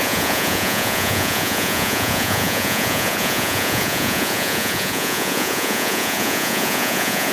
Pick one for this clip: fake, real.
fake